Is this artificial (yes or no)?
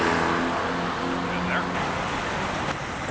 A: no